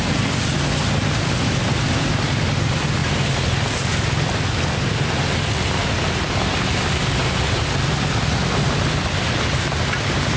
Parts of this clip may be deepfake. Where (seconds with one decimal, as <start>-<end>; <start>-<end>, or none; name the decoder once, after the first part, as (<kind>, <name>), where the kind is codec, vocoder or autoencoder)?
none